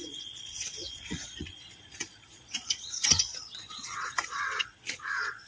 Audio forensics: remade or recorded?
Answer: remade